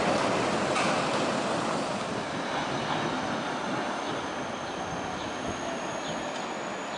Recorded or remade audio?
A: recorded